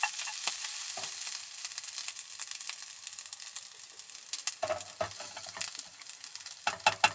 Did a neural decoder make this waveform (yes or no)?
no